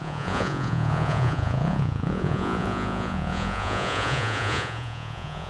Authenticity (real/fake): fake